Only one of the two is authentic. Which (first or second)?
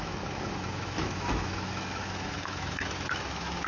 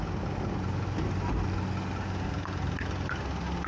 second